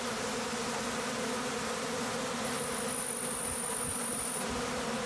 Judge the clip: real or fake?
real